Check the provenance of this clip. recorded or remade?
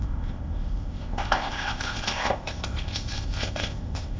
remade